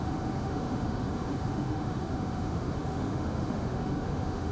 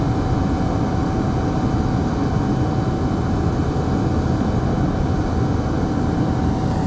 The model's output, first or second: first